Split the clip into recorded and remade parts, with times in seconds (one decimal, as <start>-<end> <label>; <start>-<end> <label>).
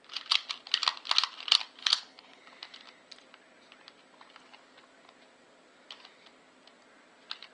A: 0.0-1.8 recorded; 1.8-2.4 remade; 2.4-7.5 recorded